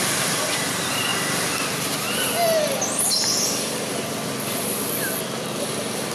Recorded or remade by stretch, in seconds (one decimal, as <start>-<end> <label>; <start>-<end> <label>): 0.0-6.1 recorded